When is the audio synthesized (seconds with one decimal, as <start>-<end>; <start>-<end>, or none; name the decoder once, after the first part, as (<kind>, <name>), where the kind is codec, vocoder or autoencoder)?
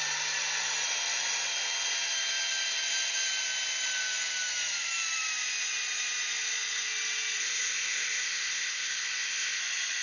7.4-9.6 (codec, ZipCodec)